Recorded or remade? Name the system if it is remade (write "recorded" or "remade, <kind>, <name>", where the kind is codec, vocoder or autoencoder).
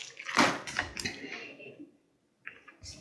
recorded